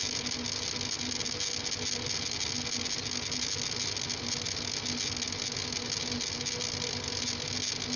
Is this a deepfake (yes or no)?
no